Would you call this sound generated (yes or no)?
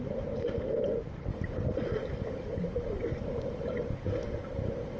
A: no